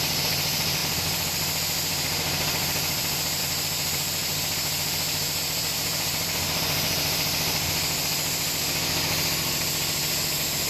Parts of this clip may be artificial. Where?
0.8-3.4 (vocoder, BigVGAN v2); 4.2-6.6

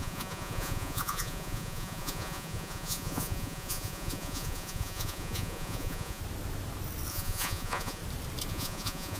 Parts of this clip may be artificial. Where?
0.0-6.2 (vocoder, Vocos); 7.1-8.0; 8.5-9.2

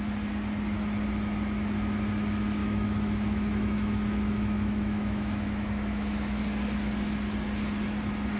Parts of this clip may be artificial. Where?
2.6-6.4 (autoencoder, DAC-VAE)

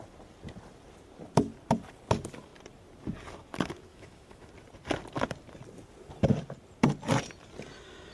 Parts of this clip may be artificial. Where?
3.9-4.5 (autoencoder, DAC-VAE)

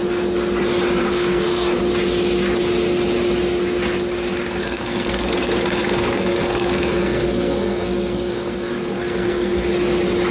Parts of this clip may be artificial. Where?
1.0-1.8 (codec, SNAC); 4.6-9.7